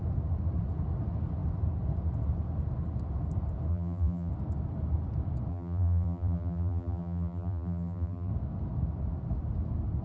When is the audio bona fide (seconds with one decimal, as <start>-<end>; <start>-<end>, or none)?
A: 0.0-3.7; 4.3-5.5; 8.3-10.0